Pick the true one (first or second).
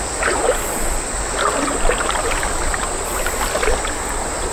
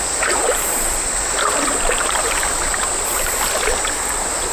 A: first